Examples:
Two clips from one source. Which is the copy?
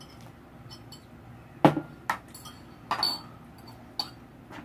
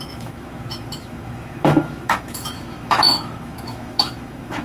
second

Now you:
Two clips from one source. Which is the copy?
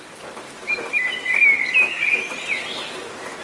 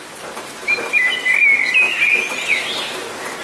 first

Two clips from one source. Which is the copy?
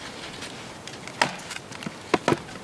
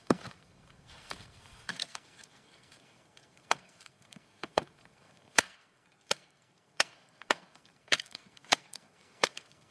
second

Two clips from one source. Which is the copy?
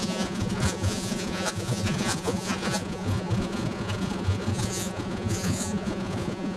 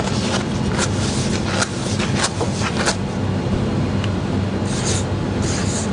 first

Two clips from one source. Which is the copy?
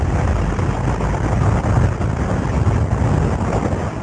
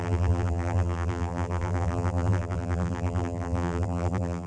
second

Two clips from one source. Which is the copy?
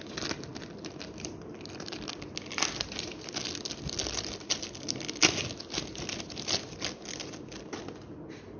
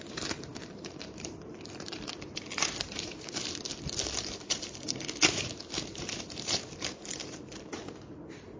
second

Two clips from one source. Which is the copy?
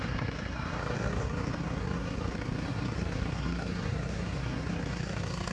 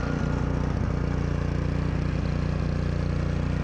first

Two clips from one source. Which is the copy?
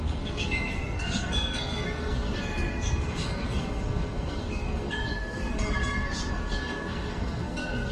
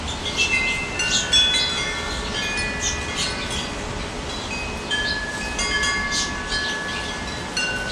first